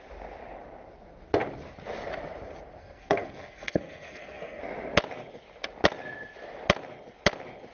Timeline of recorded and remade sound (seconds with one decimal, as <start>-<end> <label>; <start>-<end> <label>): 0.0-2.8 recorded; 2.8-4.6 remade; 4.6-7.7 recorded